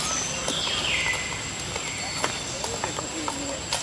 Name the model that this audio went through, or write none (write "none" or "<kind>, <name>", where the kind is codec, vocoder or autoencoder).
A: none